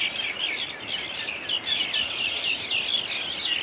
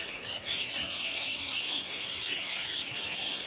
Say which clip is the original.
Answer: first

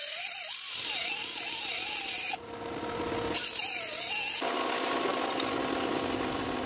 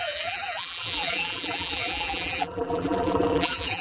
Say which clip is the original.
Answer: first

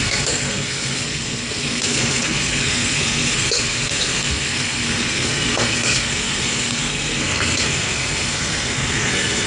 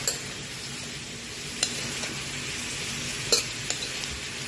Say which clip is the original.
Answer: second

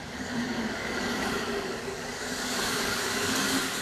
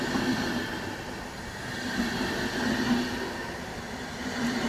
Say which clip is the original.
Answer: second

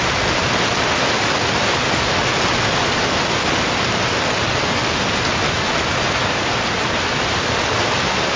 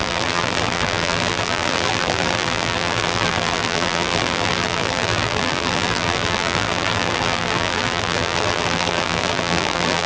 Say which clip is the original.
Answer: first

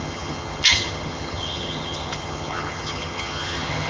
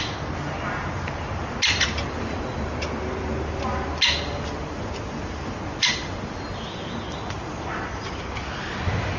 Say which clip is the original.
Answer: second